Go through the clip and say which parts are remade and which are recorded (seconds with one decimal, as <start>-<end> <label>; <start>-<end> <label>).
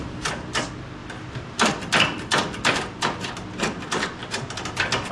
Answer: 0.0-1.0 recorded; 1.0-3.3 remade; 3.3-5.1 recorded